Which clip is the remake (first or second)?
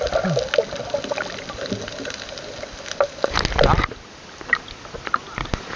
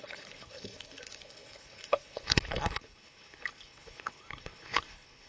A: second